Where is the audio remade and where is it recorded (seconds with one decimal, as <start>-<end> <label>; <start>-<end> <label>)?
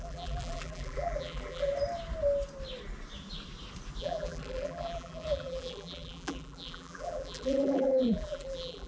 0.0-1.7 remade; 1.7-4.0 recorded; 4.0-8.9 remade